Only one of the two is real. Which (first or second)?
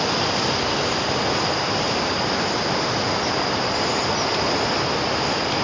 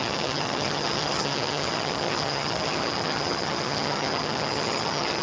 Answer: first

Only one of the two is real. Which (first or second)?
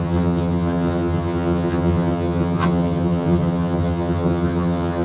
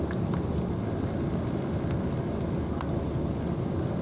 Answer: second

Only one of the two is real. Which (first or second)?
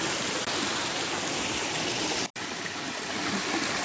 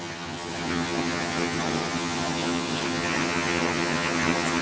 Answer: first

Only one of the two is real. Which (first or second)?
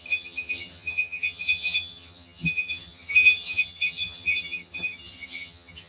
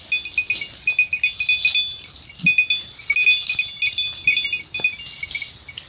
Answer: second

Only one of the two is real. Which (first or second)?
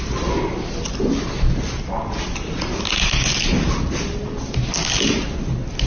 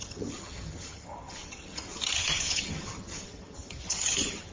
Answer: first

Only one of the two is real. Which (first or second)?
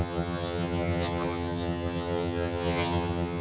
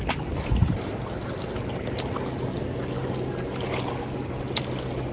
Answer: second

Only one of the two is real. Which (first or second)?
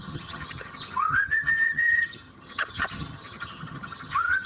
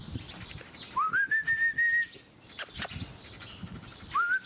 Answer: second